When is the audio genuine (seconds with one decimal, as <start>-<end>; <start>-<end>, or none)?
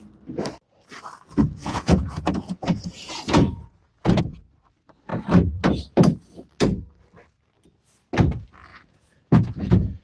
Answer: 0.0-1.6; 4.2-8.7